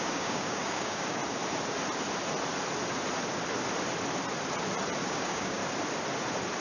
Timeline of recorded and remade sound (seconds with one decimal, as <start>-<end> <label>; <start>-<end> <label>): 0.0-1.2 remade; 1.2-5.1 recorded; 5.1-5.6 remade; 5.6-6.6 recorded